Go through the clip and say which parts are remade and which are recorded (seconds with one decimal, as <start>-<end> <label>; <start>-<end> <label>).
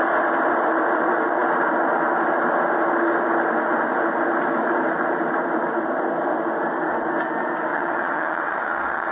0.0-7.7 recorded; 7.7-9.1 remade